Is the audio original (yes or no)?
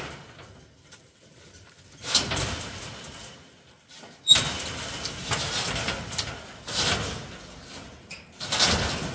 yes